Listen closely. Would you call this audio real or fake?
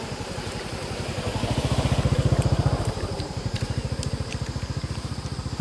fake